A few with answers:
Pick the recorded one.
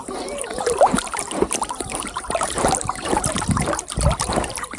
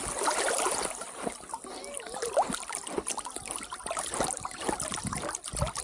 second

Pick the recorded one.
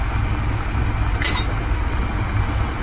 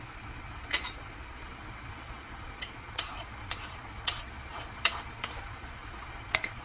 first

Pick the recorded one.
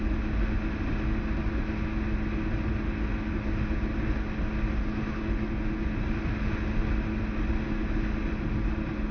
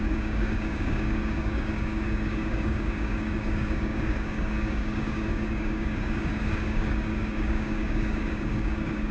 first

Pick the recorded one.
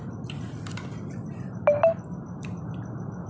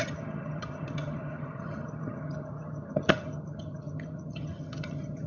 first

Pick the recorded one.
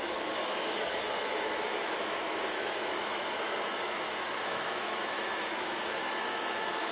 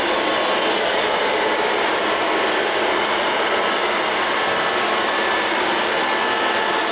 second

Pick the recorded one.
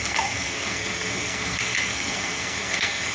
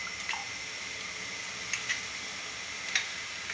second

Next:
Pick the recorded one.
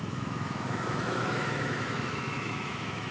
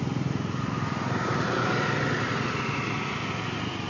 second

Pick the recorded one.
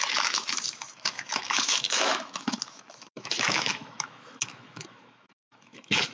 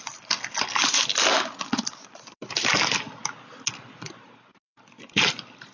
second